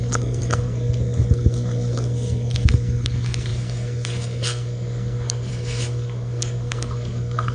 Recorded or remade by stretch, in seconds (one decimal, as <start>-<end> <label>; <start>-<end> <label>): 0.0-7.5 remade